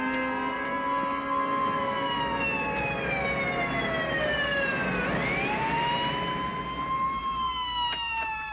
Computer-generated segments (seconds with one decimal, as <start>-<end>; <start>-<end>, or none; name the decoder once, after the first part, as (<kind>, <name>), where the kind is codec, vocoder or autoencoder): none